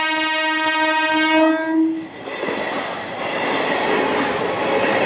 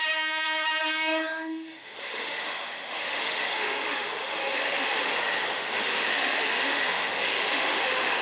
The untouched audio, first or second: first